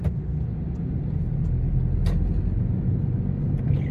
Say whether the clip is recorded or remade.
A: recorded